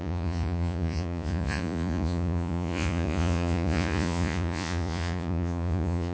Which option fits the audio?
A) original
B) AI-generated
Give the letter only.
B